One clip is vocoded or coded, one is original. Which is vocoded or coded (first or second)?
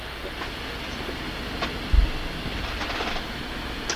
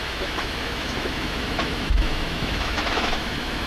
second